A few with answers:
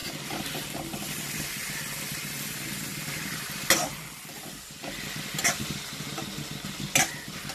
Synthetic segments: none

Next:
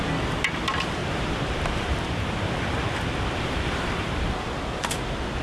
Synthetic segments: 1.0-4.2

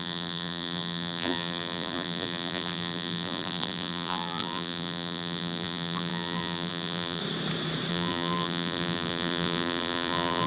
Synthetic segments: 0.0-7.2; 7.9-10.5

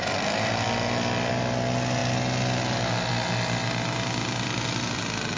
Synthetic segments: 0.0-1.3

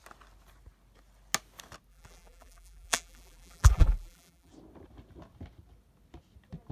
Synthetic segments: 1.9-4.5

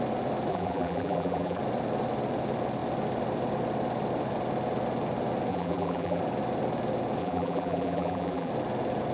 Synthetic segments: 0.5-1.6; 5.5-6.2; 7.2-8.5

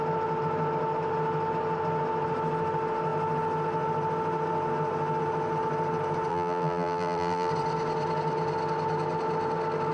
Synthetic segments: 6.3-7.5

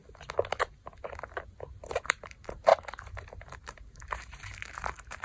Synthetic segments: 1.8-5.2